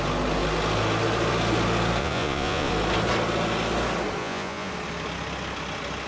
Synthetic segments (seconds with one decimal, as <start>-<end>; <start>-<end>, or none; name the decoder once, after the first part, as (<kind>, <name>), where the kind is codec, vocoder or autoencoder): 2.0-2.7 (vocoder, Vocos); 4.2-4.7